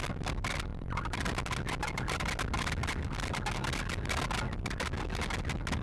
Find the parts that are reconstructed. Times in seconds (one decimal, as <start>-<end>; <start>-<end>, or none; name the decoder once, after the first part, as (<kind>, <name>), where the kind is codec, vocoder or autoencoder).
none